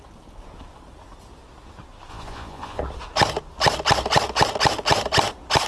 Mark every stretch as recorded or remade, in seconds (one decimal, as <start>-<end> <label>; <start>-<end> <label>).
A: 0.0-2.1 recorded; 2.1-2.8 remade; 2.8-5.7 recorded